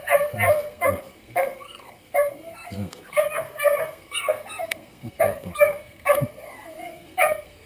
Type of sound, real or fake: fake